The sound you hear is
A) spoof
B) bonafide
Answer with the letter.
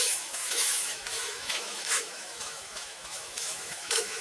A